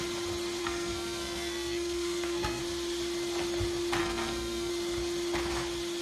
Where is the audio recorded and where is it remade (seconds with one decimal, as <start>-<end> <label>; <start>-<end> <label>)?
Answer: 0.0-0.6 recorded; 0.6-2.6 remade; 2.6-4.0 recorded; 4.0-4.7 remade; 4.7-6.0 recorded

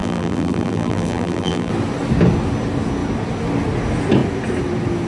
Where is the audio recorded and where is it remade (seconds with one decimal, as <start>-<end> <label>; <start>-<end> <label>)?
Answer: 0.0-1.7 remade; 1.7-5.1 recorded

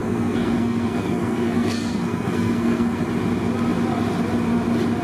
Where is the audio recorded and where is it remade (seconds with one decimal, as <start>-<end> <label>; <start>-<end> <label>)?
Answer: 0.0-3.0 remade; 3.0-5.0 recorded

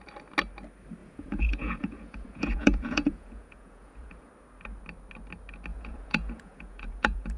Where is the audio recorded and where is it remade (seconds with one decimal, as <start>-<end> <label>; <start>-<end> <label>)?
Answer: 0.0-1.0 recorded; 1.0-4.3 remade; 4.3-5.7 recorded; 5.7-7.4 remade